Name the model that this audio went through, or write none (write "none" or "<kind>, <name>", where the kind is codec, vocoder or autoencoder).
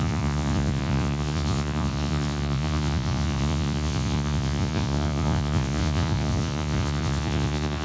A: vocoder, Vocos